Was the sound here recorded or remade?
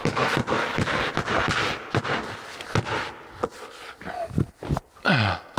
recorded